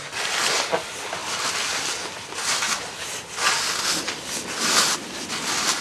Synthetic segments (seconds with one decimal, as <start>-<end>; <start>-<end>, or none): none